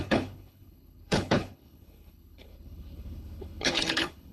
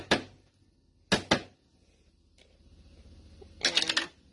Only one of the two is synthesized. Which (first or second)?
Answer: first